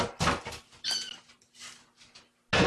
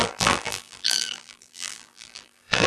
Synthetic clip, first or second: second